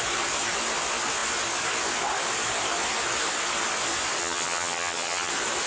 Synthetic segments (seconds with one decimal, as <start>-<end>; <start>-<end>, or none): 4.2-5.3